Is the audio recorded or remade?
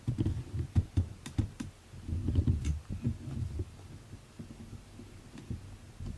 recorded